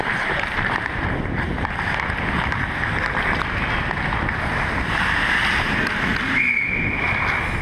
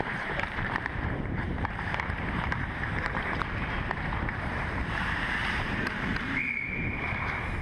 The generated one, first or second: second